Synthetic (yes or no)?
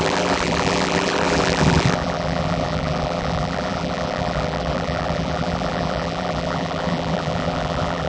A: yes